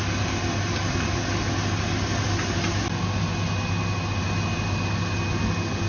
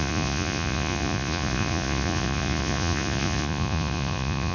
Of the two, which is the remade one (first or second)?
second